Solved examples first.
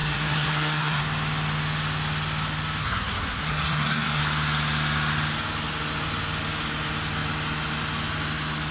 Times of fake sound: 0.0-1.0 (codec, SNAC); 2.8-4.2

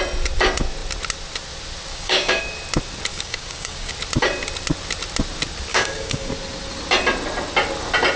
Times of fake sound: 1.9-2.4 (codec, DAC); 3.1-3.9; 5.7-6.3

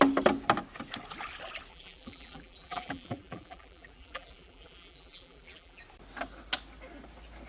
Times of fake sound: 1.7-5.8 (vocoder, BigVGAN v2)

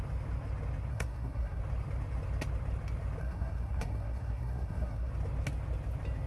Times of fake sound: 0.9-1.6 (codec, SNAC); 3.2-5.1

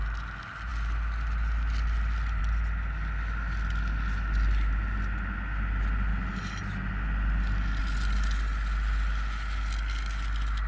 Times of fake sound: none

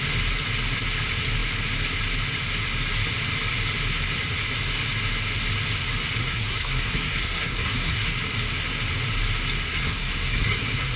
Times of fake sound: 6.2-8.1 (codec, SNAC); 9.7-11.0

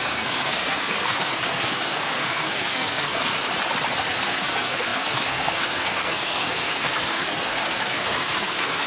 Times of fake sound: 0.0-3.3 (codec, SNAC); 4.1-8.9

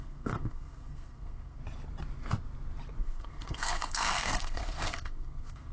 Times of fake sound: 0.0-1.6 (codec, SNAC); 3.0-5.7